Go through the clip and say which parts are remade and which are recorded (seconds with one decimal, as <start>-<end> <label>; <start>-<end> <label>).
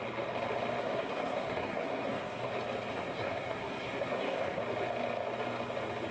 0.0-0.8 recorded; 0.8-2.5 remade; 2.5-2.9 recorded; 2.9-4.6 remade; 4.6-6.1 recorded